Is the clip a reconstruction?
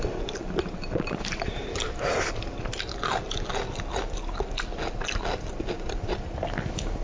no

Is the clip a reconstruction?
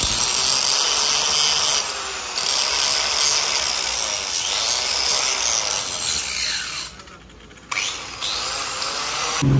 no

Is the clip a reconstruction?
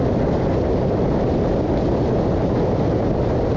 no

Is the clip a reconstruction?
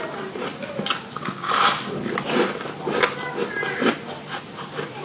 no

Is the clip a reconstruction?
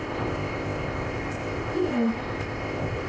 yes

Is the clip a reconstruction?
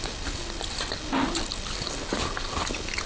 no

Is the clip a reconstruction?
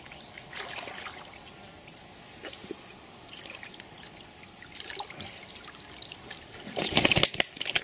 no